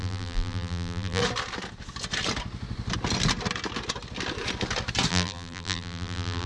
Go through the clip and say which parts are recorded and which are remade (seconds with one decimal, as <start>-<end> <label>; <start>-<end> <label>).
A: 0.0-1.2 remade; 1.2-5.1 recorded; 5.1-6.5 remade